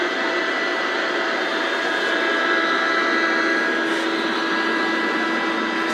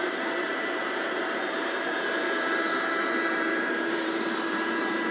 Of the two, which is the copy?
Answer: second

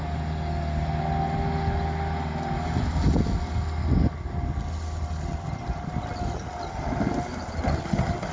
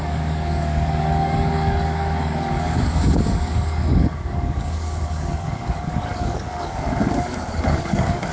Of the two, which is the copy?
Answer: second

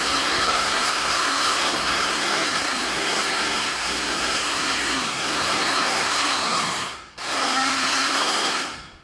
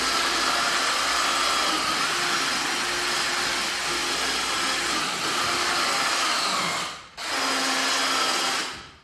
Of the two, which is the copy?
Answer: first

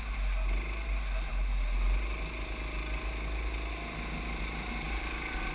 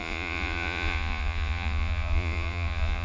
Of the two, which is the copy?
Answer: second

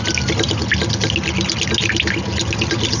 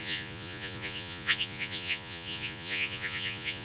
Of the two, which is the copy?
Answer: second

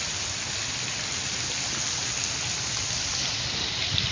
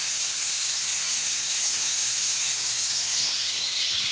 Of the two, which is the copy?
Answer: second